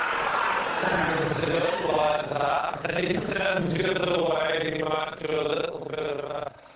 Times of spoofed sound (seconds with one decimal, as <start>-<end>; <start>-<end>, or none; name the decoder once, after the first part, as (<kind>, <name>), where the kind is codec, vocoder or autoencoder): 2.6-3.6 (codec, HILCodec)